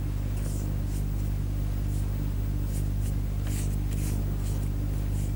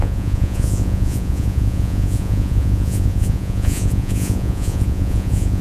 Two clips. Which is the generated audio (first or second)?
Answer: second